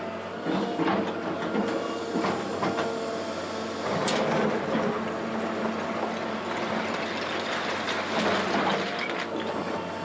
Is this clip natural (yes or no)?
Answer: yes